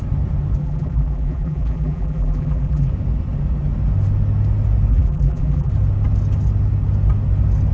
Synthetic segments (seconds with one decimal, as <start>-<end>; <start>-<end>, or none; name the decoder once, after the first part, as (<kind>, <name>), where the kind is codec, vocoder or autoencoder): 0.6-2.9 (vocoder, BigVGAN v2); 4.9-5.7